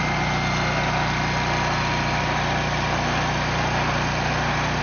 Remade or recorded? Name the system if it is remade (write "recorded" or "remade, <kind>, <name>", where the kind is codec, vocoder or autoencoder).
recorded